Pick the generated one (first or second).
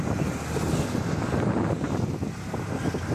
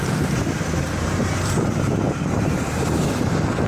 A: second